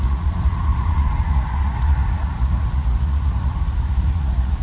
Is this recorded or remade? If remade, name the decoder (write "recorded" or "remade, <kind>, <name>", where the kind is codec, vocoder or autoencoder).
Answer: remade, vocoder, Vocos